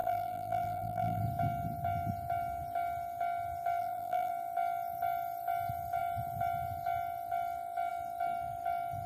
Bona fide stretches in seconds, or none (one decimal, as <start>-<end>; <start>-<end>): 1.2-3.8; 4.3-9.1